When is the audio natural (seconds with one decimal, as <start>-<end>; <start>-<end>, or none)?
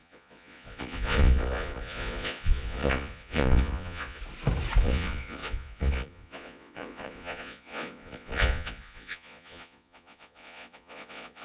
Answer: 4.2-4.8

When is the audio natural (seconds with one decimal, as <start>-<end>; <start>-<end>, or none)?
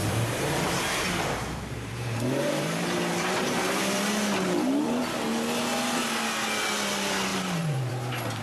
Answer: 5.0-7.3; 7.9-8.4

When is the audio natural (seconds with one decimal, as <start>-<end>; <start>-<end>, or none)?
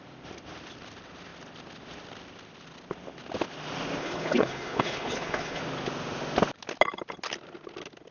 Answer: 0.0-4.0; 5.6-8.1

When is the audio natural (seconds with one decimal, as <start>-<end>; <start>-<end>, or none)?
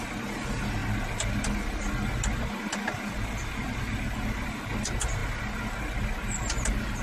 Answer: 0.0-7.0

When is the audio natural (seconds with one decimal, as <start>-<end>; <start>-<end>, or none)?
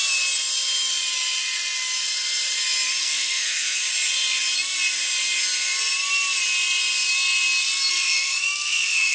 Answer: 0.0-3.0; 3.8-7.9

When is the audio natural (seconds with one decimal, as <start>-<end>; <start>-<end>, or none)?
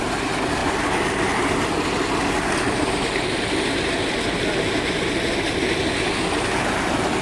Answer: 0.0-7.2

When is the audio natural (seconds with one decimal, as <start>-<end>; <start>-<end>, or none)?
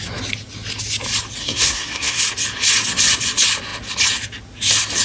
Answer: 0.0-1.4; 2.2-5.0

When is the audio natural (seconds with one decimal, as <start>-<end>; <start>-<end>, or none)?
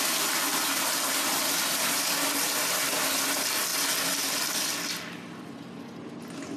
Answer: 0.0-3.7; 5.4-6.6